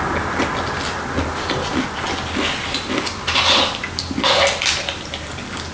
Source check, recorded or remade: recorded